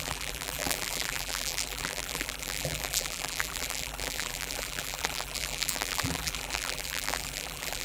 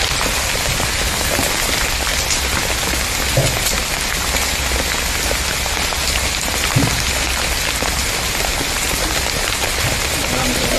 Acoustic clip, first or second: second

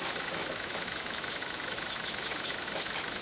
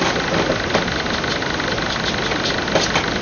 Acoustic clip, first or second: second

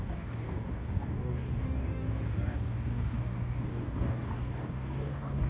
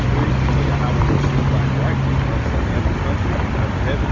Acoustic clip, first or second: second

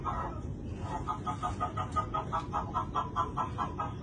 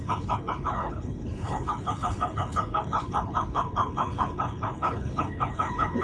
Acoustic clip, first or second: first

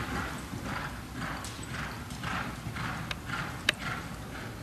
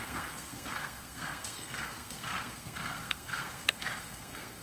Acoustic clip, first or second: first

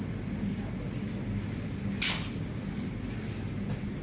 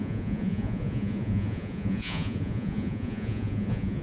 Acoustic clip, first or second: first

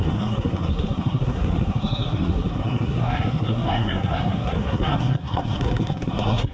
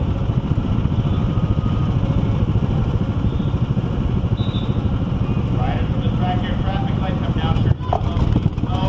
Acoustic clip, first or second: second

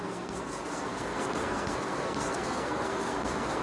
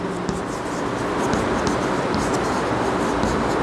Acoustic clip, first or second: second